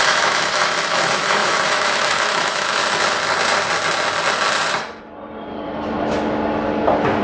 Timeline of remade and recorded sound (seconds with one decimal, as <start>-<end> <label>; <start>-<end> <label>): 0.0-2.8 remade; 2.8-7.2 recorded